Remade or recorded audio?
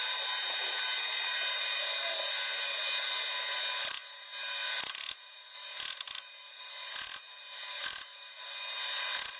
recorded